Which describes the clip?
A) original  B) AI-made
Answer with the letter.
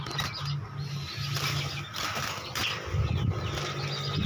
A